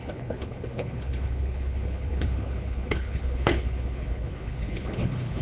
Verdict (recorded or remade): remade